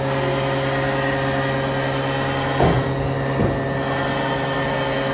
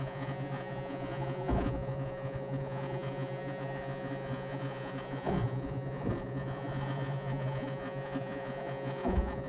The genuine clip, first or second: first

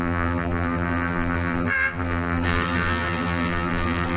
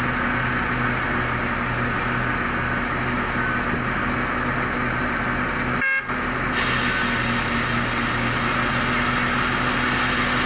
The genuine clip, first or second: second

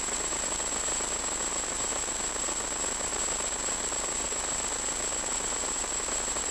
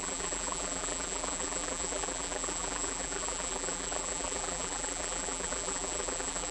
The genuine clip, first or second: first